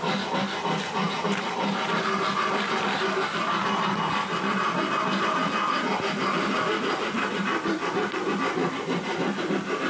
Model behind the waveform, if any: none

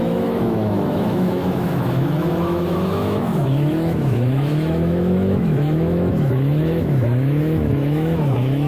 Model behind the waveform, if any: autoencoder, DAC-VAE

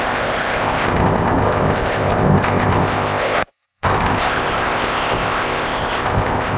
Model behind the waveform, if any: codec, ZipCodec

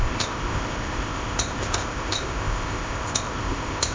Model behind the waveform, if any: codec, ZipCodec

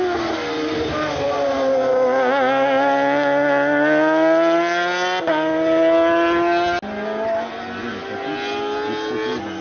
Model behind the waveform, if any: none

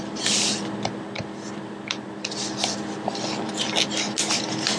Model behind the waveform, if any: none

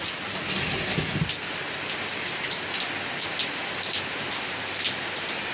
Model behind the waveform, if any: none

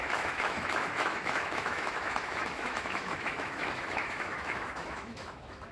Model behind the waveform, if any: autoencoder, DAC-VAE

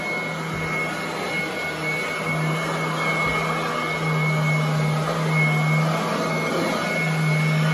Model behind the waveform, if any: none